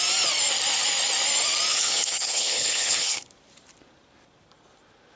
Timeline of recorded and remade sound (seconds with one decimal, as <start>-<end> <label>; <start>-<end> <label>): 0.0-1.7 recorded; 1.7-3.3 remade; 3.3-5.2 recorded